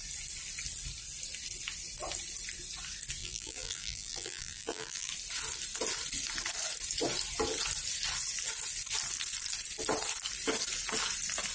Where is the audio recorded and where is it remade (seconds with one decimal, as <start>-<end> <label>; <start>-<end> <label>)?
0.0-3.2 recorded; 3.2-5.1 remade; 5.1-11.5 recorded